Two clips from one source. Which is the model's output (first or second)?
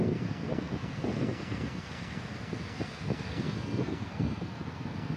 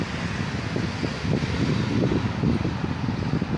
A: first